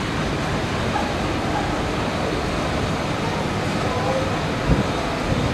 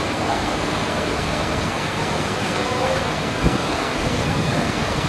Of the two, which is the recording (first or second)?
first